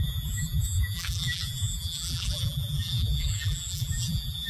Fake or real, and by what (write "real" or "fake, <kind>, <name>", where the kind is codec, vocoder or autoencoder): fake, vocoder, BigVGAN v2